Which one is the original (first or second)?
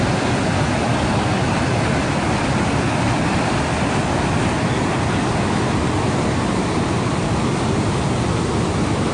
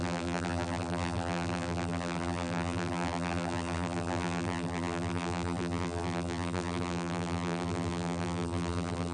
first